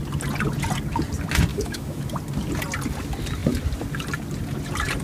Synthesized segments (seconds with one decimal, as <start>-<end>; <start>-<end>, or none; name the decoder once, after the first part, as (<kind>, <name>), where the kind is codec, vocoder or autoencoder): 1.5-2.0 (autoencoder, DAC-VAE)